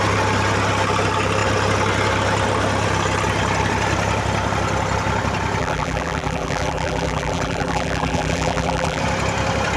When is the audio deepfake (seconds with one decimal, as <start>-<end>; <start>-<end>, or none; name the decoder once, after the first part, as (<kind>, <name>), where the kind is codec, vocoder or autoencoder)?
5.6-9.0 (vocoder, BigVGAN v2)